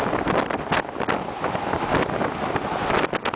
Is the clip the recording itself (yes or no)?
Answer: yes